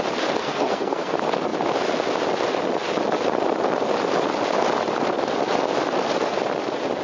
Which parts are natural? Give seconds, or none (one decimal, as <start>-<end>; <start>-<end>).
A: 0.0-0.4; 1.1-7.0